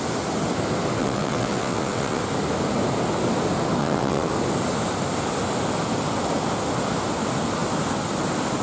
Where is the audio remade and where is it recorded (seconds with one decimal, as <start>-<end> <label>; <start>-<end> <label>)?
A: 0.0-1.0 recorded; 1.0-2.2 remade; 2.2-3.8 recorded; 3.8-4.3 remade; 4.3-8.6 recorded